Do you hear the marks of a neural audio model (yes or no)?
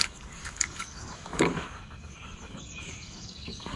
yes